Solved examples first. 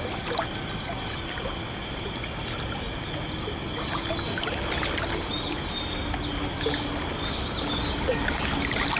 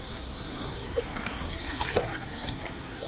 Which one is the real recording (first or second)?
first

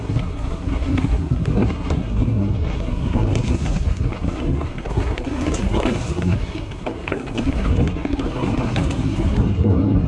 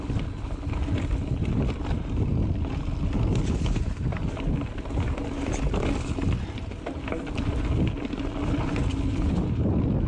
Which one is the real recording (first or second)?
second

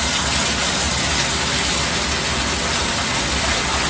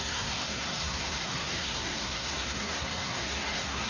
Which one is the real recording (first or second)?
first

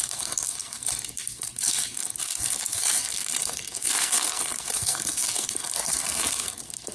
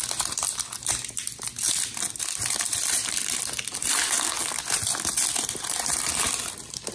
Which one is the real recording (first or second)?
second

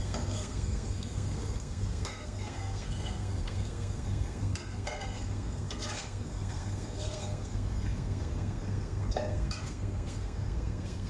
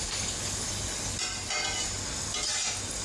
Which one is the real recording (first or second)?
second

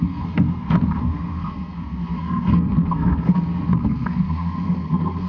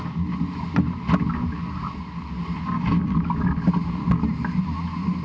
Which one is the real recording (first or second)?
second